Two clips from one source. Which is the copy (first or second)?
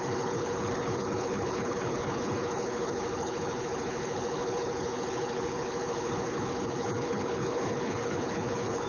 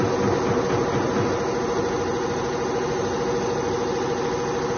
first